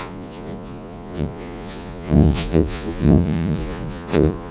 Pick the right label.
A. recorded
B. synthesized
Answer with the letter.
B